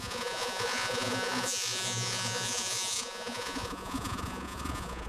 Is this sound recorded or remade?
remade